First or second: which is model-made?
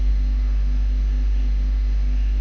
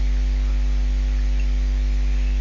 first